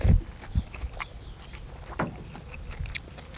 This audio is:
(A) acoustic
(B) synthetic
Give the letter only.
B